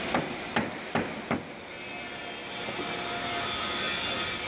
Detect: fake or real real